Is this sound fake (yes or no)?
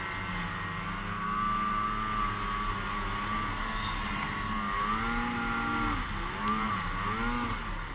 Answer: no